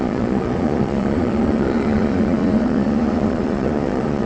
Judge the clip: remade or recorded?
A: remade